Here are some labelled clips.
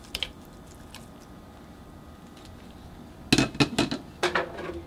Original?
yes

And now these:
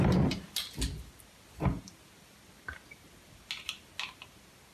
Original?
yes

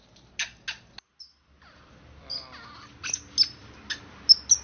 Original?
yes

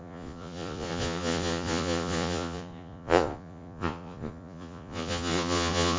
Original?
no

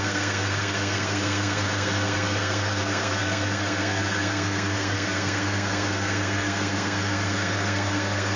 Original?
no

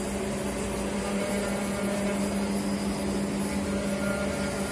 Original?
yes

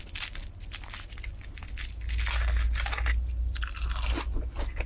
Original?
yes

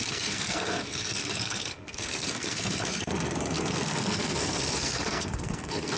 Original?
no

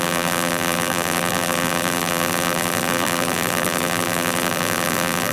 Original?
no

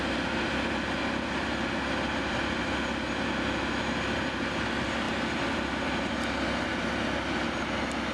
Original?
yes